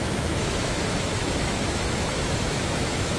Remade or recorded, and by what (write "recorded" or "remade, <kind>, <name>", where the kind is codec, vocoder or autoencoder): remade, autoencoder, DAC-VAE